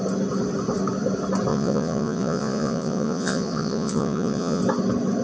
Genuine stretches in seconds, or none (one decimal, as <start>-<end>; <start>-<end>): 0.0-1.5; 4.6-5.2

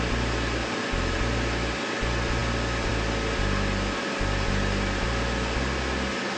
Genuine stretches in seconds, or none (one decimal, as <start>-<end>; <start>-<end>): 0.0-6.4